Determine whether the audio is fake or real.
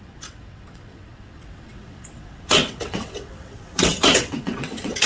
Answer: fake